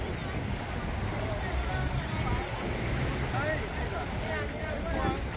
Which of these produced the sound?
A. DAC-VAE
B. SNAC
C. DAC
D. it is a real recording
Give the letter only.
D